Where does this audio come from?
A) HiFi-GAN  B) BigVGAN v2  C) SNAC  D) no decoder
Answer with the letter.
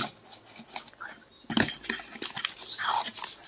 D